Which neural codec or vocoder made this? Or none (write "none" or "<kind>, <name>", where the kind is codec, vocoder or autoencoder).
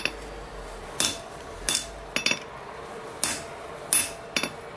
none